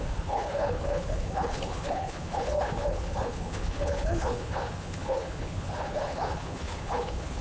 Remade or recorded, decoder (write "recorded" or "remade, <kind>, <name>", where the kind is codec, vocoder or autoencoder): remade, codec, HILCodec